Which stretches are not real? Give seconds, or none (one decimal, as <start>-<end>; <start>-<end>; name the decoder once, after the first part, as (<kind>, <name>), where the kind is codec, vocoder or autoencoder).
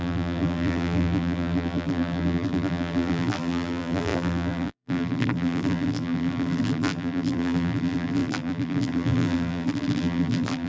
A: 0.0-10.7 (vocoder, BigVGAN v2)